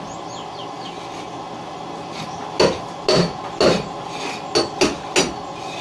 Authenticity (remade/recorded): recorded